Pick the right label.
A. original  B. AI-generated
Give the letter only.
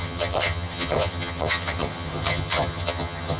B